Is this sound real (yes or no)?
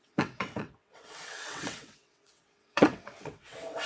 no